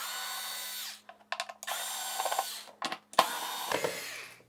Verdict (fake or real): real